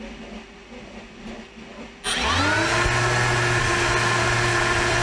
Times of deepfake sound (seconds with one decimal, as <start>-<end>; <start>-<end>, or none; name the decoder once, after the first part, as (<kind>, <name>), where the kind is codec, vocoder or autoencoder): none

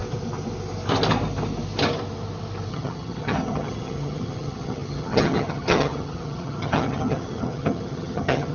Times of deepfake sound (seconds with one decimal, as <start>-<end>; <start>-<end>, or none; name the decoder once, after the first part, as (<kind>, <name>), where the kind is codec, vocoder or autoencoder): 2.7-8.5 (vocoder, HiFi-GAN)

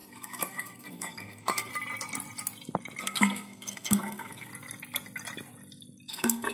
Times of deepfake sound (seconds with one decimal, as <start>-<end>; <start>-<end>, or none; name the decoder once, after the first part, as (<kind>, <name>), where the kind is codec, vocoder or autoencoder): 0.0-1.7 (codec, SNAC); 3.0-4.5; 6.1-6.5

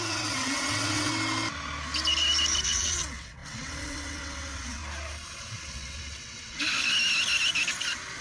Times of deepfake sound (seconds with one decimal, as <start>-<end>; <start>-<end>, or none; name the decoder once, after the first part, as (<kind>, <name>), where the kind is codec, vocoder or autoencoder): 0.0-1.1 (vocoder, WaveNeXt); 2.6-4.8; 5.4-6.6